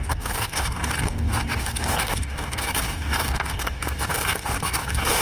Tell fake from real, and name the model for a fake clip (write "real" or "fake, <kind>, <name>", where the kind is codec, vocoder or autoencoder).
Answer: fake, codec, DAC